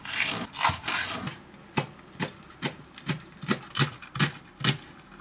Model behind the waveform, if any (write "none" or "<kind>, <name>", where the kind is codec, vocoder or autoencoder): none